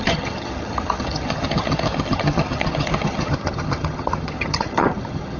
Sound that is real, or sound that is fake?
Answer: fake